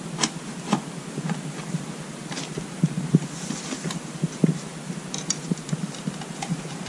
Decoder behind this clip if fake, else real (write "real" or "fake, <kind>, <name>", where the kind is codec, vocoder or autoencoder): real